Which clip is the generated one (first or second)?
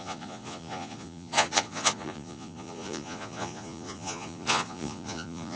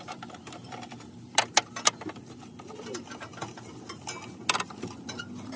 first